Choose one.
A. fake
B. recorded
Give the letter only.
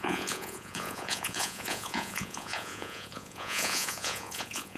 A